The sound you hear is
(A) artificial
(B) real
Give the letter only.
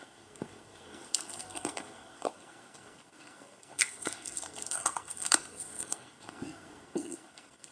A